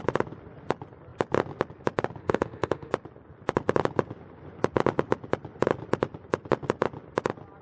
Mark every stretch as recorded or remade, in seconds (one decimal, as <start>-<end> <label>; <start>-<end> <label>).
0.0-2.2 recorded; 2.2-2.9 remade; 2.9-7.6 recorded